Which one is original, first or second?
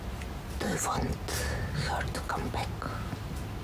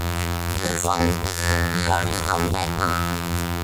first